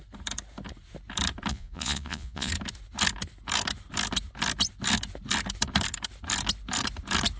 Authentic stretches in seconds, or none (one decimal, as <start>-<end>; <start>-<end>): 0.0-1.5; 2.5-7.4